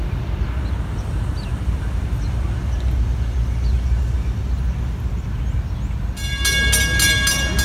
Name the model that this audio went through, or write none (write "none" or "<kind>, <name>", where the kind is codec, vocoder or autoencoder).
none